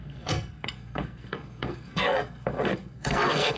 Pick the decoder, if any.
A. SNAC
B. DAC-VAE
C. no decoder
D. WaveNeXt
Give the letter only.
A